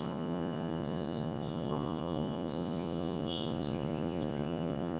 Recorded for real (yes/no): no